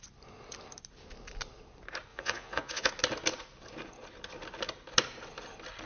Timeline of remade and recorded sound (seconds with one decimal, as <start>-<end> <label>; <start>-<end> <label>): 0.0-2.1 recorded; 2.1-2.9 remade; 2.9-5.9 recorded